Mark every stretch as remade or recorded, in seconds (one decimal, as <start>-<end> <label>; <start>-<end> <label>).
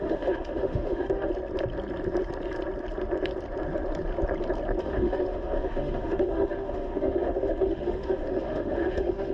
0.0-1.3 remade; 1.3-4.8 recorded; 4.8-9.3 remade